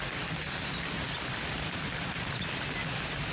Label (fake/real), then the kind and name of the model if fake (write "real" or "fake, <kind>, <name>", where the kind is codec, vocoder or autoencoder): real